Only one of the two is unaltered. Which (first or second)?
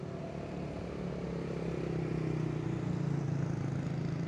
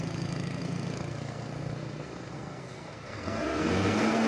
first